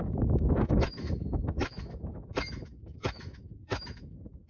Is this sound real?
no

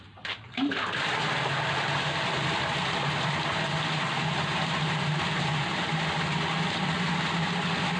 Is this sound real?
yes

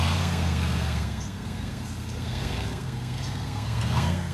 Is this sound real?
no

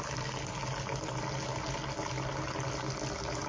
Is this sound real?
yes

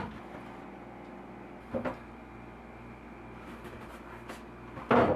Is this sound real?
no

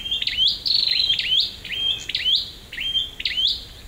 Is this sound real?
yes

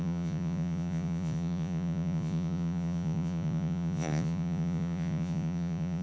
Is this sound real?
no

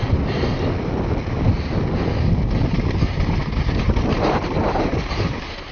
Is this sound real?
yes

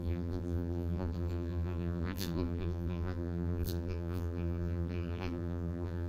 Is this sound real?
no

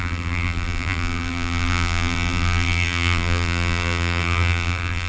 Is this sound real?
no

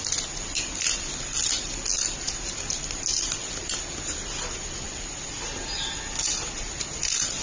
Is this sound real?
yes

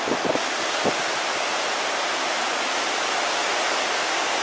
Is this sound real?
yes